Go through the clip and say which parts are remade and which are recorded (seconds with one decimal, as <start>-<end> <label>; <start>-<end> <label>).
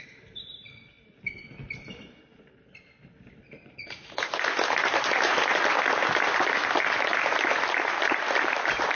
0.0-3.8 recorded; 3.8-4.5 remade; 4.5-7.1 recorded; 7.1-8.9 remade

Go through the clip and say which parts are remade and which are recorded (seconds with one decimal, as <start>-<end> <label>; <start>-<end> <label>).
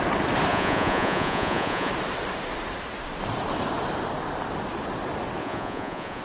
0.0-0.5 recorded; 0.5-1.9 remade; 1.9-5.4 recorded; 5.4-6.2 remade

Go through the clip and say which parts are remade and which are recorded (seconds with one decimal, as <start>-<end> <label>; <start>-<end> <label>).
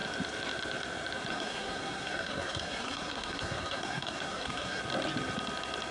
0.0-1.3 recorded; 1.3-4.8 remade; 4.8-5.9 recorded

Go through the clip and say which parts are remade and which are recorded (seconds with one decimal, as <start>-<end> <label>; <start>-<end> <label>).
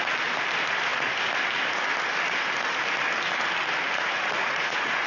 0.0-4.4 recorded; 4.4-5.1 remade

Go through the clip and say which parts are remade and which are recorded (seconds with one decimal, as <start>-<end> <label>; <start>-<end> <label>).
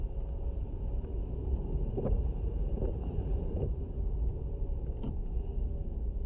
0.0-1.9 recorded; 1.9-5.0 remade; 5.0-6.3 recorded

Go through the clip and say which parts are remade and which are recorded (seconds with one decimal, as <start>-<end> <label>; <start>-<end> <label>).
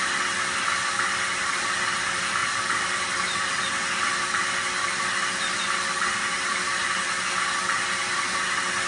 0.0-8.9 recorded